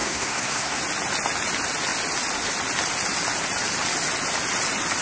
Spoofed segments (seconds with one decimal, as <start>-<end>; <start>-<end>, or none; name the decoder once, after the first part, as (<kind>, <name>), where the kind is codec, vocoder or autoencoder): 0.0-0.8 (codec, SNAC)